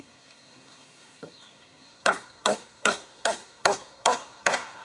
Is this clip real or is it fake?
fake